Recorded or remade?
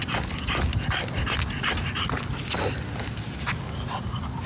recorded